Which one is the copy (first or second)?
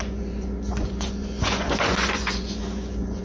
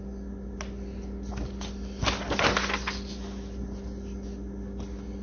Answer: first